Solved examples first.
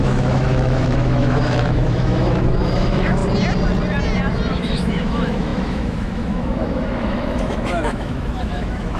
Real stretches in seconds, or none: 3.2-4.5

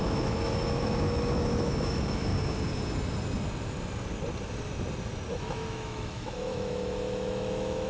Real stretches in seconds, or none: 2.3-5.3